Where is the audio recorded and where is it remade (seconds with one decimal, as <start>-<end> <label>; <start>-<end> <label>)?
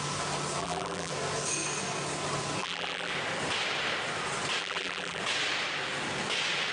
0.0-0.6 recorded; 0.6-1.1 remade; 1.1-2.6 recorded; 2.6-3.1 remade; 3.1-4.6 recorded; 4.6-5.2 remade; 5.2-6.7 recorded